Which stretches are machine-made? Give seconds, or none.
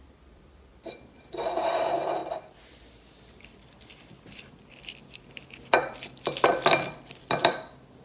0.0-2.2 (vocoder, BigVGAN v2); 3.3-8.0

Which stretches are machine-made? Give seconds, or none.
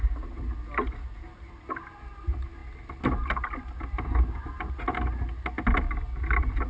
none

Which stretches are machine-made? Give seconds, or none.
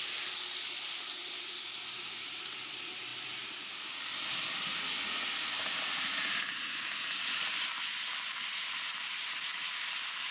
none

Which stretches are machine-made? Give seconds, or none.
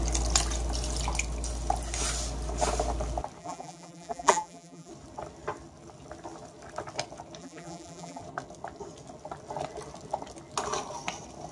3.4-4.9 (vocoder, BigVGAN v2); 7.4-8.2